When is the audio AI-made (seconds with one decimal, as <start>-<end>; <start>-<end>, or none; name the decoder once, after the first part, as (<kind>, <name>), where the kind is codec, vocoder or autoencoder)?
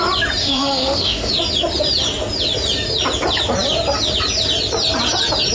0.4-1.3 (autoencoder, DAC-VAE)